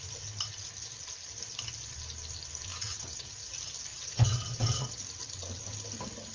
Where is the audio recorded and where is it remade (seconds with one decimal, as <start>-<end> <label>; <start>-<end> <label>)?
0.0-2.7 recorded; 2.7-3.4 remade; 3.4-3.9 recorded; 3.9-5.0 remade; 5.0-6.3 recorded